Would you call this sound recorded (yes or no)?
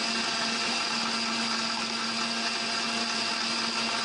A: yes